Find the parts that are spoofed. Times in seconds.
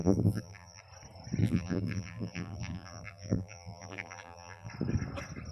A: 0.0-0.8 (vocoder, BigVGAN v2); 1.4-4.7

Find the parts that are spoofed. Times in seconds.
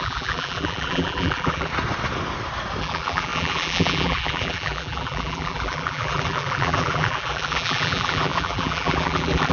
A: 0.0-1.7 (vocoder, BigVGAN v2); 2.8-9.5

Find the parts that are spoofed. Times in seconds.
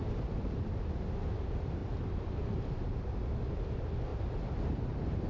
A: 0.0-0.6 (vocoder, BigVGAN v2); 4.1-5.3